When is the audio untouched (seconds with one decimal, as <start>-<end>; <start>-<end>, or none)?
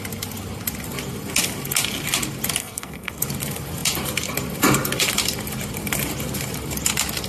0.0-2.6; 3.2-7.3